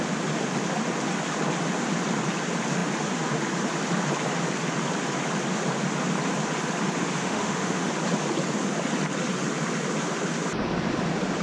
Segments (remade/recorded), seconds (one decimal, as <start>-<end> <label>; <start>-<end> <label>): 0.0-7.2 recorded; 7.2-7.9 remade; 7.9-11.4 recorded